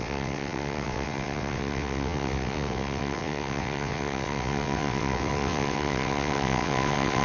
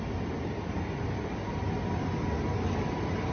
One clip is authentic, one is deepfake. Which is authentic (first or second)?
second